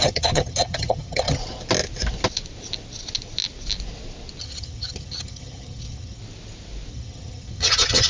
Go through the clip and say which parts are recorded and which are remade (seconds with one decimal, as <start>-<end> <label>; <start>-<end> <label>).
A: 0.0-1.4 remade; 1.4-4.4 recorded; 4.4-6.2 remade; 6.2-6.9 recorded; 6.9-8.1 remade